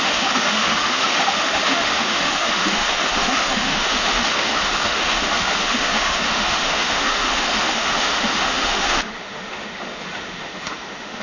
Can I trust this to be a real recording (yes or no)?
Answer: no